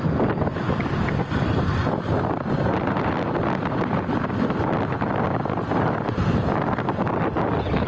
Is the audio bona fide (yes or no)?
no